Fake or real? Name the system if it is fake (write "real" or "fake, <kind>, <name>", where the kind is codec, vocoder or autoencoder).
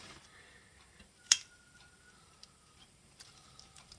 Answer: fake, vocoder, BigVGAN v2